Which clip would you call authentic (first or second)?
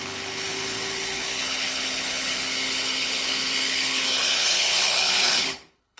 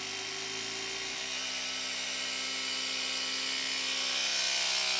second